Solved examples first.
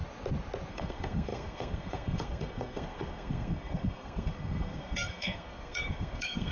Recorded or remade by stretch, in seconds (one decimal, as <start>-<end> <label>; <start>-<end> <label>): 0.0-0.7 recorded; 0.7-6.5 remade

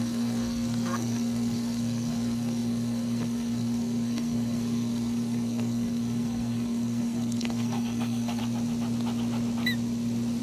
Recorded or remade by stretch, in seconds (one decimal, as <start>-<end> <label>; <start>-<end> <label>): 0.0-8.4 remade; 8.4-10.4 recorded

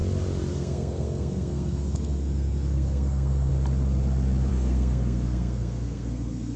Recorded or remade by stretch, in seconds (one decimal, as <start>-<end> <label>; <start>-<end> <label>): 0.0-0.5 recorded; 0.5-3.5 remade; 3.5-4.5 recorded; 4.5-6.6 remade

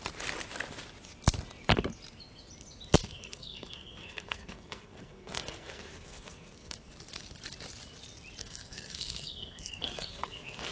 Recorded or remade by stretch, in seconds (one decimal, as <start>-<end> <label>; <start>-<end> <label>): 0.0-3.0 recorded; 3.0-6.9 remade; 6.9-8.4 recorded; 8.4-10.7 remade